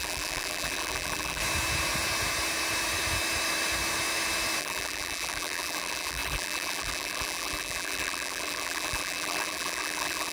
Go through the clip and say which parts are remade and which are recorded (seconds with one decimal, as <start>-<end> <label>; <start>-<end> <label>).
0.0-1.4 remade; 1.4-4.6 recorded; 4.6-10.3 remade